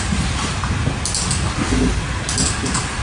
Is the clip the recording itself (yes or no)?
yes